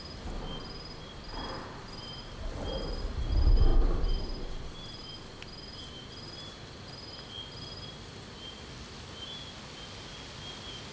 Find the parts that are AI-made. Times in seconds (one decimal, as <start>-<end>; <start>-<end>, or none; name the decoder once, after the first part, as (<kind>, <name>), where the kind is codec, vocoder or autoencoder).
none